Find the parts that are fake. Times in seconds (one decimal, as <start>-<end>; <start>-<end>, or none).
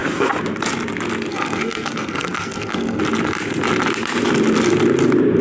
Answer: 1.3-3.0